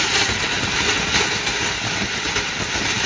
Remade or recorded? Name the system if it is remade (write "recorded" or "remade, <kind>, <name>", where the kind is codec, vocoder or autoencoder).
recorded